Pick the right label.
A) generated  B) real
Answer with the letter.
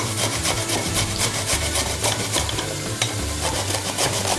A